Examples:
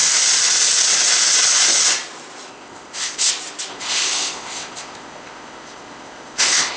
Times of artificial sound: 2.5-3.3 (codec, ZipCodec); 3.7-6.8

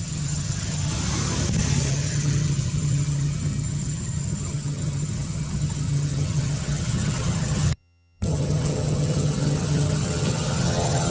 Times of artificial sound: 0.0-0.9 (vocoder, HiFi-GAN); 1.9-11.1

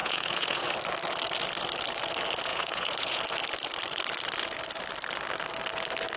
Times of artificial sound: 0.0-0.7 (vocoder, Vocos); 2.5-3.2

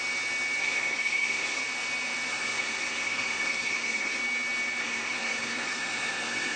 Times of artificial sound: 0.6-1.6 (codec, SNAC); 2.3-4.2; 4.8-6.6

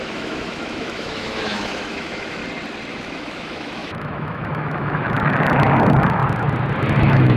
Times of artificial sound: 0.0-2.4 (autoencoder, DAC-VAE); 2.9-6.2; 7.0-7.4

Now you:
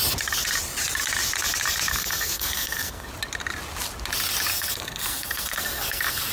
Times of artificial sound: 1.9-3.1 (codec, SNAC); 4.5-6.3

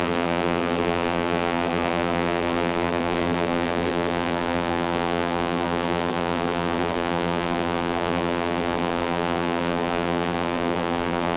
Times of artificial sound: 0.0-11.4 (vocoder, BigVGAN v2)